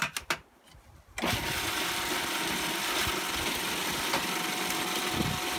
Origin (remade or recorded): recorded